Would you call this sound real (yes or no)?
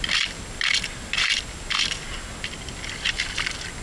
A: yes